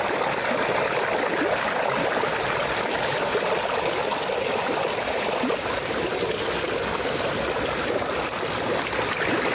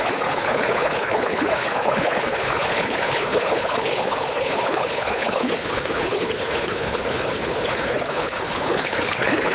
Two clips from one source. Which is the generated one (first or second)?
second